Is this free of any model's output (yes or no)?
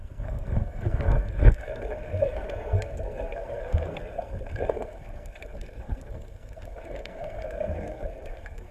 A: no